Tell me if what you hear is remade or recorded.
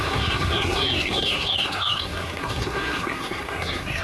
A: remade